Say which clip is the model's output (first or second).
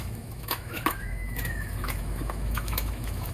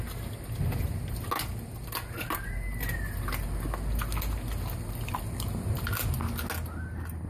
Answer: first